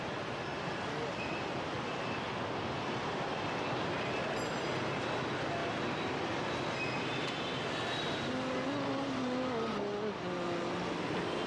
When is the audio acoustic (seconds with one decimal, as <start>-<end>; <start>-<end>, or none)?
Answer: 0.0-11.5